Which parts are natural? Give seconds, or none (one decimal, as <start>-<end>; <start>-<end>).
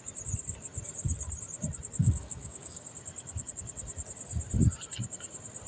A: 0.0-2.0; 2.8-5.7